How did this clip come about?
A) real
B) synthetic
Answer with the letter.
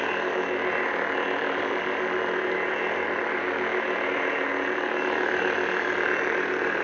A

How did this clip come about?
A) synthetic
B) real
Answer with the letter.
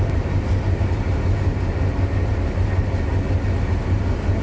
B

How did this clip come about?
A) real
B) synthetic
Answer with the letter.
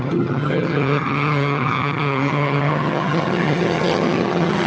B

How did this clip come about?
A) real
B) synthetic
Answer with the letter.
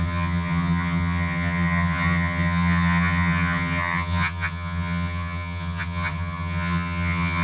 B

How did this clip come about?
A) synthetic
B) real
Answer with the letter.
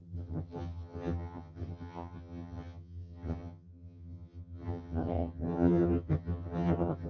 A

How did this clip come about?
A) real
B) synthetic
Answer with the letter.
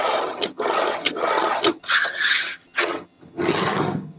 B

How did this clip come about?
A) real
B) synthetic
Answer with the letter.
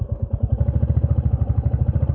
A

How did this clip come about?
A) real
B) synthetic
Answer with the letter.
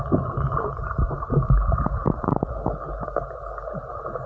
A